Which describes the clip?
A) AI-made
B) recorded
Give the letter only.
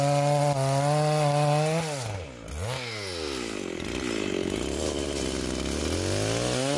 B